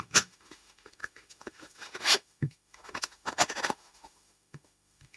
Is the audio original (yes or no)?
no